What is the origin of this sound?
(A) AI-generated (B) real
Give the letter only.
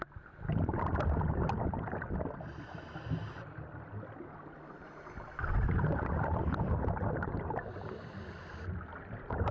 B